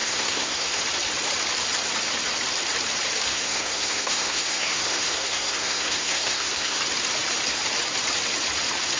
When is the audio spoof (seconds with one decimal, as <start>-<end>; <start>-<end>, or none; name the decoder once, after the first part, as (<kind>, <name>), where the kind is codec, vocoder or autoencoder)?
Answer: 0.0-0.8 (codec, SNAC); 3.3-6.8